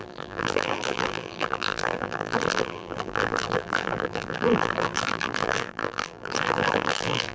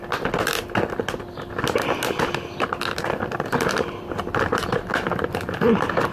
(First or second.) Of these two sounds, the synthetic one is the first